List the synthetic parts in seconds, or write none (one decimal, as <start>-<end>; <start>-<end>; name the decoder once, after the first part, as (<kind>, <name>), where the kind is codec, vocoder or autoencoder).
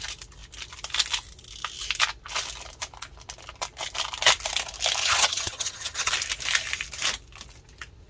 5.0-6.1 (vocoder, HiFi-GAN)